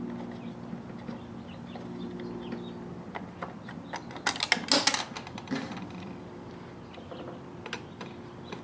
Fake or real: real